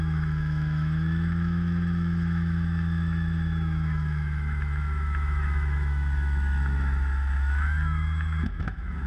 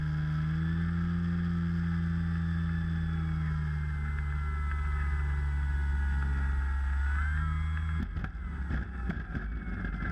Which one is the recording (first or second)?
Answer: second